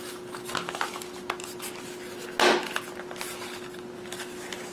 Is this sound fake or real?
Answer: real